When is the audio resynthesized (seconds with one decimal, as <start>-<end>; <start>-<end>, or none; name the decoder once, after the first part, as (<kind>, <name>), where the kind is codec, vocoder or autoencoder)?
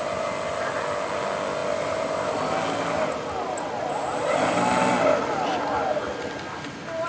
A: none